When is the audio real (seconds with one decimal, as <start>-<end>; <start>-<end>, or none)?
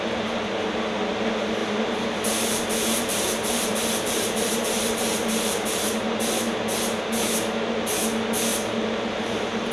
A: 0.0-1.6; 6.2-8.5